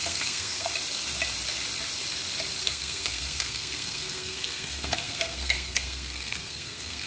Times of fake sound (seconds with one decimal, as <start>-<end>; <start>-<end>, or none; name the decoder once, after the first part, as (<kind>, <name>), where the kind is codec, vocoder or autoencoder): 0.0-0.7 (codec, SNAC); 2.6-7.1